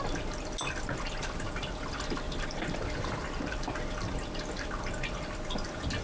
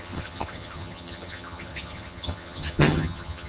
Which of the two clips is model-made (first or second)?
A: second